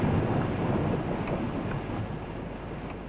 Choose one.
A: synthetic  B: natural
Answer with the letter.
B